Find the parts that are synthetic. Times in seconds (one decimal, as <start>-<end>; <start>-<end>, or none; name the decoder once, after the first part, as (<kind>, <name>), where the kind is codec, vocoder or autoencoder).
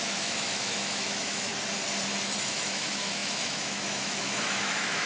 0.0-1.5 (autoencoder, DAC-VAE); 2.4-5.1